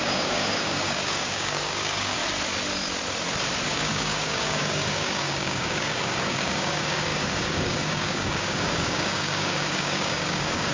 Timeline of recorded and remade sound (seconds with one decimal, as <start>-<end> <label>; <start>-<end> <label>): 0.0-2.2 remade; 2.2-3.7 recorded; 3.7-10.7 remade